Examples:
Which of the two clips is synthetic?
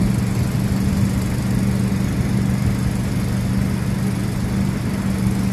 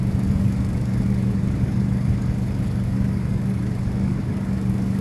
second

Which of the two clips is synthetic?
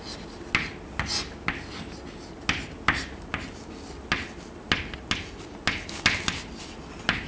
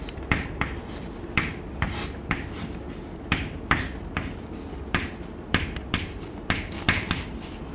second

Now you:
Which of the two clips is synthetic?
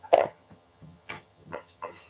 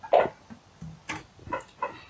first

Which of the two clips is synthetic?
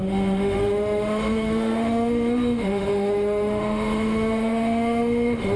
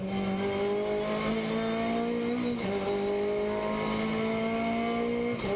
first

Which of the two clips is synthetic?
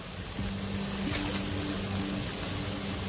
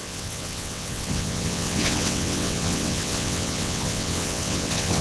second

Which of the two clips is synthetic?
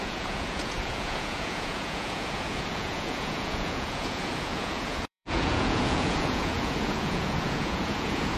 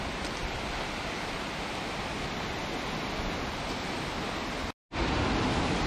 first